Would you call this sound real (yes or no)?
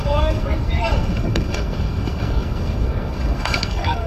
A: no